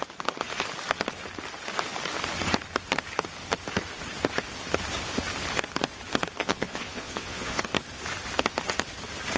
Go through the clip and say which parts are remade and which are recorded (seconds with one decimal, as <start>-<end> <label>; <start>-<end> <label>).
0.0-6.4 recorded; 6.4-7.6 remade; 7.6-9.4 recorded